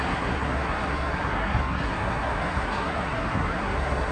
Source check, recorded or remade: remade